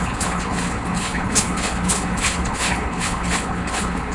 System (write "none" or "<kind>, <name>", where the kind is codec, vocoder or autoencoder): codec, HILCodec